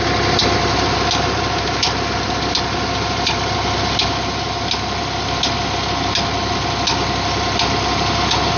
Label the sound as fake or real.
real